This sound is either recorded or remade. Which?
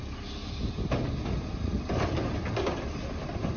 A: recorded